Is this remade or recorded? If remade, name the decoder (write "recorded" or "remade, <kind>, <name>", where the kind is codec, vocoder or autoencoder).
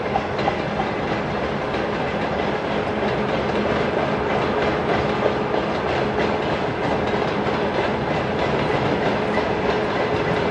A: recorded